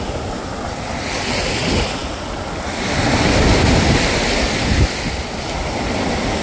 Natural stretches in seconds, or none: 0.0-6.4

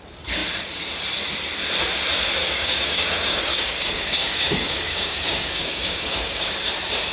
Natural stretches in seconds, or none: 0.0-2.4; 6.5-7.1

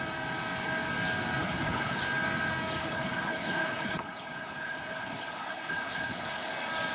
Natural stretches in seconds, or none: 0.0-1.4; 2.0-2.8; 6.5-6.9